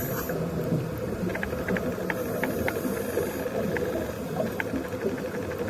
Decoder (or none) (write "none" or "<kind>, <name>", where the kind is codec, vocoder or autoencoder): none